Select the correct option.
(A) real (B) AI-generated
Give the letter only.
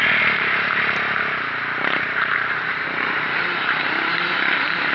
B